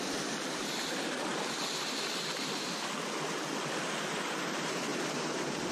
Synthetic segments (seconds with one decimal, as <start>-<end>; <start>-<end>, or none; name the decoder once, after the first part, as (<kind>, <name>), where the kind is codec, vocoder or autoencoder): none